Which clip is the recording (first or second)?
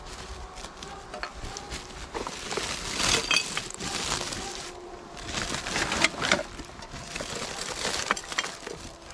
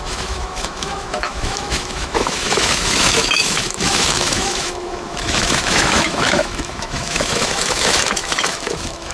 first